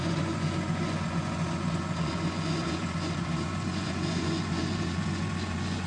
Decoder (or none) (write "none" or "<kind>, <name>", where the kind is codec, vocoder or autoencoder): vocoder, Vocos